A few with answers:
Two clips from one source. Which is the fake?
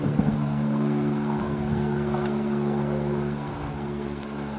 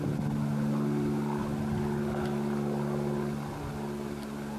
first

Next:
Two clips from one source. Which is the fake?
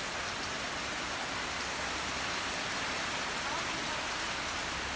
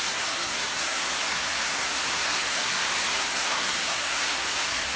second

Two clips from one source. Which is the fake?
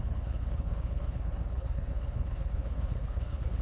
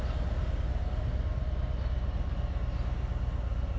first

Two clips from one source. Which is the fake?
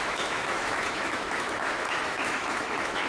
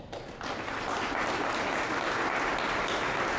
first